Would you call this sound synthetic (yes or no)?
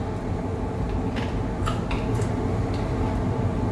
no